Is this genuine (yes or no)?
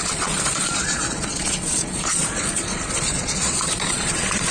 no